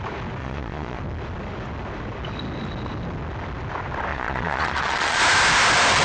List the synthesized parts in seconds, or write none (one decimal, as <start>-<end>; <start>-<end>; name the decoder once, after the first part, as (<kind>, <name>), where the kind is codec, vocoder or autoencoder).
0.4-1.0 (vocoder, Vocos); 4.1-5.2